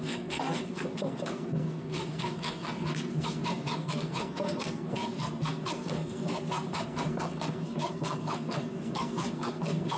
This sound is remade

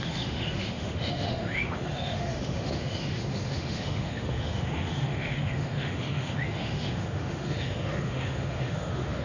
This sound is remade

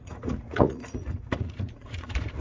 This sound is remade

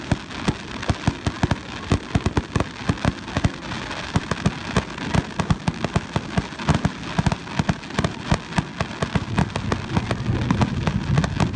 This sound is recorded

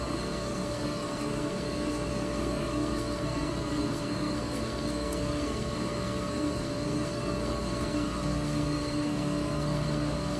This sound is remade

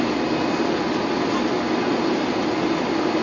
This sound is recorded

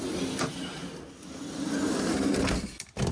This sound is recorded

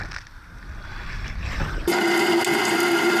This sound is recorded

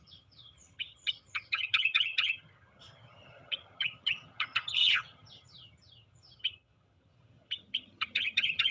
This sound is remade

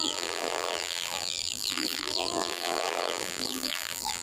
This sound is remade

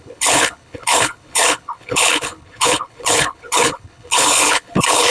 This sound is remade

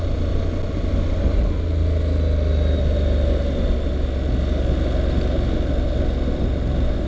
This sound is recorded